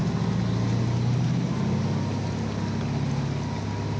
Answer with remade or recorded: recorded